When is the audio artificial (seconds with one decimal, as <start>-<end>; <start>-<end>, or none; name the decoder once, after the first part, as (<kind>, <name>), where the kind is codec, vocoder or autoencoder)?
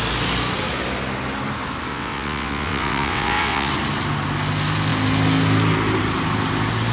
1.9-3.7 (vocoder, WaveNeXt)